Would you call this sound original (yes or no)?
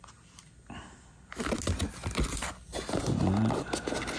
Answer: yes